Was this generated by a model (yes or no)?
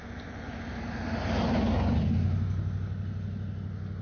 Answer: no